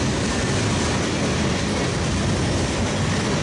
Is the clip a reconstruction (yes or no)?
no